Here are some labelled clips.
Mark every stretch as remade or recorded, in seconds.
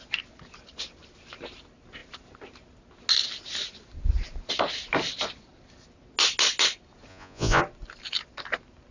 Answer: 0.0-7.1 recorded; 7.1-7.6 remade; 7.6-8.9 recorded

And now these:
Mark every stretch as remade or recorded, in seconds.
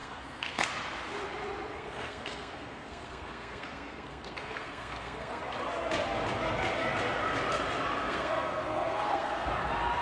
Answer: 0.0-0.7 remade; 0.7-1.7 recorded; 1.7-5.4 remade; 5.4-8.0 recorded; 8.0-9.5 remade; 9.5-10.0 recorded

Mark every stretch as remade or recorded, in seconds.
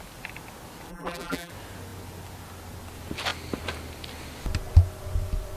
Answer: 0.0-0.9 recorded; 0.9-1.5 remade; 1.5-5.6 recorded